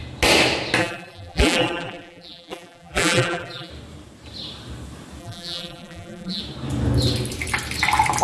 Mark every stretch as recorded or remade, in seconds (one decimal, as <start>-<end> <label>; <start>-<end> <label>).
0.0-0.8 recorded; 0.8-3.7 remade; 3.7-5.2 recorded; 5.2-6.4 remade; 6.4-8.2 recorded